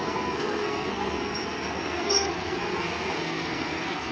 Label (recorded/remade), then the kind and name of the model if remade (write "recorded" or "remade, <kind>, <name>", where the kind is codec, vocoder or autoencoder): remade, codec, SNAC